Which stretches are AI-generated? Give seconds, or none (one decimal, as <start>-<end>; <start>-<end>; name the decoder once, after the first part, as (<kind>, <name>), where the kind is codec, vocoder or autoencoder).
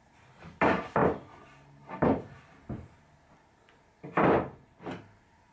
none